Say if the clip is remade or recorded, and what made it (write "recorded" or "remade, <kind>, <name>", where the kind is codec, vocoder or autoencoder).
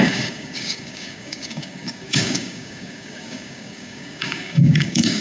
remade, codec, DAC